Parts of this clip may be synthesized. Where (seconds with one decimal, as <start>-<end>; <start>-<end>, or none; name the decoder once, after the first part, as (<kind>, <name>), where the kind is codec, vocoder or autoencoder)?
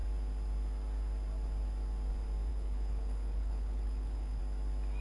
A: 2.5-4.4 (codec, HILCodec)